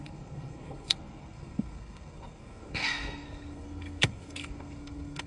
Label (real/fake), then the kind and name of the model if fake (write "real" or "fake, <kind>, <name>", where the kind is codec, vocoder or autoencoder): fake, codec, SNAC